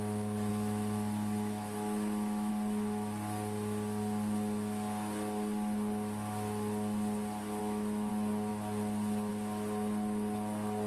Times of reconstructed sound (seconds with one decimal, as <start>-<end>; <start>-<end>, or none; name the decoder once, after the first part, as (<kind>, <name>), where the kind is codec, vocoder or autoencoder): 0.5-2.5 (autoencoder, DAC-VAE); 7.6-8.1